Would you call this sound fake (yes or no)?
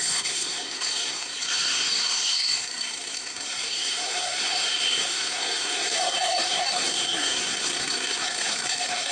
yes